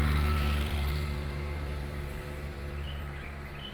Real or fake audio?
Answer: fake